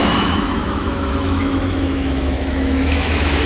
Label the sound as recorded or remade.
remade